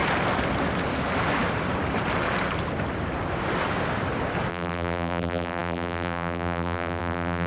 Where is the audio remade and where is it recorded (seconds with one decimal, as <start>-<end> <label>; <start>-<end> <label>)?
0.0-4.5 recorded; 4.5-7.5 remade